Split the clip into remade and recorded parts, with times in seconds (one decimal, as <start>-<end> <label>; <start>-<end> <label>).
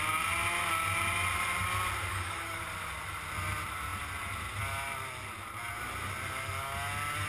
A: 0.0-2.1 recorded; 2.1-2.6 remade; 2.6-7.3 recorded